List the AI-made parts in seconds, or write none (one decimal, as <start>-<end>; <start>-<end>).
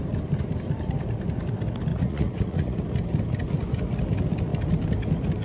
1.9-2.8